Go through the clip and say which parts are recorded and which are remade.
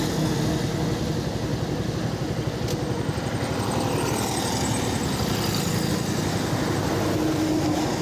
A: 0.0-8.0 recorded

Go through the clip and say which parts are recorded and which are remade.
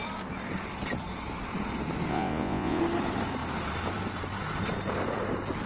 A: 0.0-2.1 recorded; 2.1-2.8 remade; 2.8-5.7 recorded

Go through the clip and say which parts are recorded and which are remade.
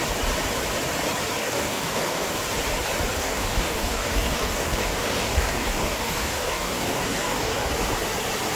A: 0.0-1.4 recorded; 1.4-2.4 remade; 2.4-3.2 recorded; 3.2-7.7 remade; 7.7-8.6 recorded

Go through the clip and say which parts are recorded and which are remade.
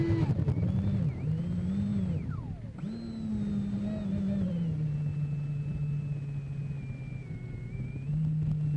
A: 0.0-8.8 recorded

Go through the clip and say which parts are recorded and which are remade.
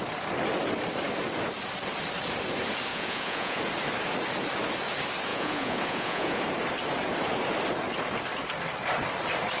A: 0.0-2.9 recorded; 2.9-3.6 remade; 3.6-5.3 recorded; 5.3-6.4 remade; 6.4-9.6 recorded